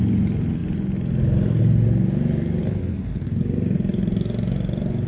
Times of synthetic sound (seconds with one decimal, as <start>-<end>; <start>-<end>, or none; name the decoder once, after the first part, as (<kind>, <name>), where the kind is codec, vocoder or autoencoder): 2.6-3.3 (codec, SNAC)